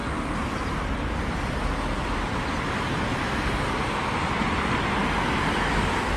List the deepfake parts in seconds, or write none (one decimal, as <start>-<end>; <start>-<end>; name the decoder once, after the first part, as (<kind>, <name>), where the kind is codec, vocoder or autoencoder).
none